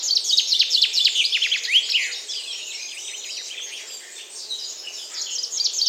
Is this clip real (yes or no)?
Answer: yes